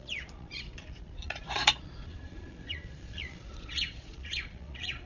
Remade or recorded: remade